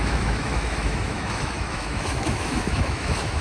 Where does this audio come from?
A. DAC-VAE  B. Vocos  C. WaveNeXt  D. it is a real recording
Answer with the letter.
A